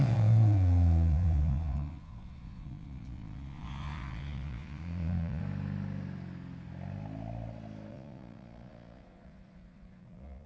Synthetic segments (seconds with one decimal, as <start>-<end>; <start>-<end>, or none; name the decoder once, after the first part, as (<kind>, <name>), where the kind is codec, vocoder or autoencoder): 0.0-5.4 (vocoder, Vocos); 7.9-10.5